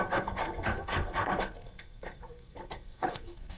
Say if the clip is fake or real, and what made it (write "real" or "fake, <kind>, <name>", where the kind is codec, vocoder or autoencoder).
fake, codec, SNAC